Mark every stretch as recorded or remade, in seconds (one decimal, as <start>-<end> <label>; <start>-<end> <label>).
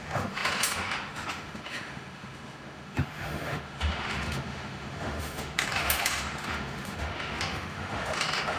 0.0-8.6 remade